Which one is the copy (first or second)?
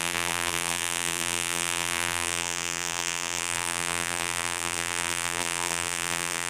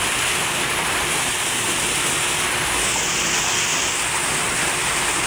first